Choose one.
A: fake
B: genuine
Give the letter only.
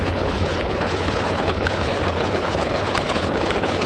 A